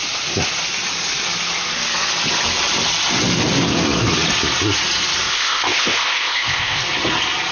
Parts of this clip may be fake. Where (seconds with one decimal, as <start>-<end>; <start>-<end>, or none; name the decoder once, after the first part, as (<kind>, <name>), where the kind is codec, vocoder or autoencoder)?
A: 5.3-6.8 (codec, ZipCodec)